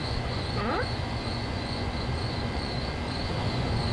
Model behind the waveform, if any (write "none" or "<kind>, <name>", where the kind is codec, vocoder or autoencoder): vocoder, Vocos